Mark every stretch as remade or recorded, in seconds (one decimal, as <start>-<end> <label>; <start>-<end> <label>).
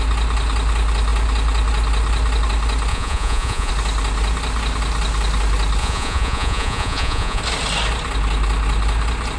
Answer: 0.0-2.9 recorded; 2.9-3.7 remade; 3.7-5.8 recorded; 5.8-7.4 remade; 7.4-9.4 recorded